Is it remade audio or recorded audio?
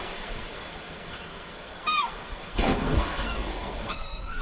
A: remade